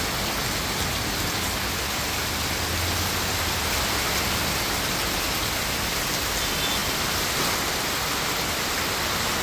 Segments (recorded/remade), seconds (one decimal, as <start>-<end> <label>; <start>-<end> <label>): 0.0-9.4 recorded